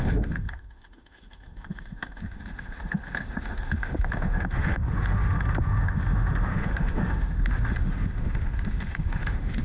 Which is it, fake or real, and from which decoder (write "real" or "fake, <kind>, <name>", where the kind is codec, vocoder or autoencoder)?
fake, autoencoder, DAC-VAE